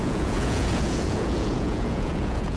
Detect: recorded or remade remade